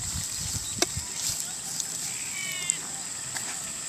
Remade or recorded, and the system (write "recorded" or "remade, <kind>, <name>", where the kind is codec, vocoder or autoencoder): recorded